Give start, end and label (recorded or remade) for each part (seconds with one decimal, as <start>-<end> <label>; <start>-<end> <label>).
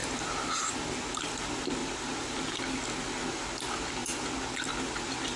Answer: 0.0-5.4 recorded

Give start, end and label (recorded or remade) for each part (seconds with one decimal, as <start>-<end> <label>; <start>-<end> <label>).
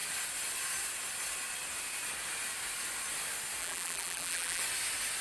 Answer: 0.0-3.6 recorded; 3.6-4.6 remade; 4.6-5.2 recorded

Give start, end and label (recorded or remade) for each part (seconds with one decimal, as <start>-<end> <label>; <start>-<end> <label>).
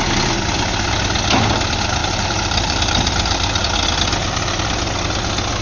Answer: 0.0-2.0 recorded; 2.0-3.6 remade; 3.6-5.6 recorded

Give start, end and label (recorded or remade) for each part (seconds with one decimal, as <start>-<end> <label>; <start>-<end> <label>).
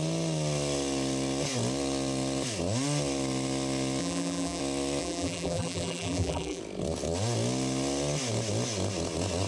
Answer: 0.0-4.0 recorded; 4.0-4.6 remade; 4.6-5.0 recorded; 5.0-6.6 remade; 6.6-9.5 recorded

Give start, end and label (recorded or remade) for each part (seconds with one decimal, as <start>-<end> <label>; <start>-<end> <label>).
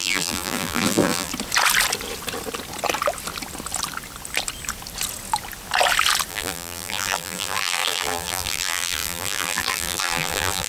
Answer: 0.0-1.3 remade; 1.3-6.3 recorded; 6.3-10.7 remade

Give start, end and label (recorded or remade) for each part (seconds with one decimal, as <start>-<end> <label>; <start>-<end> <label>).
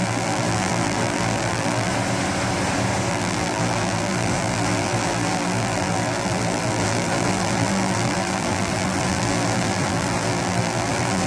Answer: 0.0-1.9 remade; 1.9-3.1 recorded; 3.1-11.3 remade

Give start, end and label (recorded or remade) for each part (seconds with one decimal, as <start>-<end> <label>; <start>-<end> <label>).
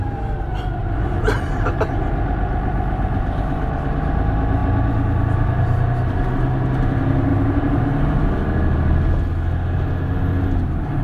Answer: 0.0-0.8 recorded; 0.8-2.1 remade; 2.1-7.3 recorded; 7.3-7.8 remade; 7.8-11.0 recorded